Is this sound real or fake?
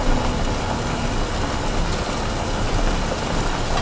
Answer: real